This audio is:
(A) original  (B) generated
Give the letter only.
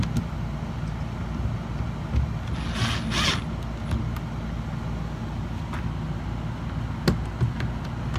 A